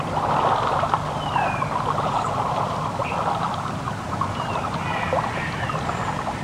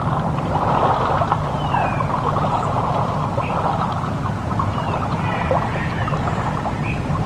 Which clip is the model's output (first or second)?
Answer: second